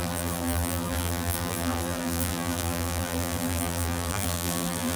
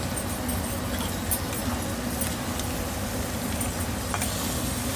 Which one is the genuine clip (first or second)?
second